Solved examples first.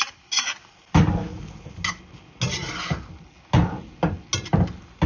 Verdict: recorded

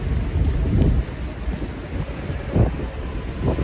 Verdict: recorded